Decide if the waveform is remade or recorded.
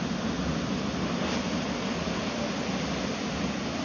recorded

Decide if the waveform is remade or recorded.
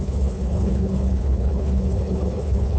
remade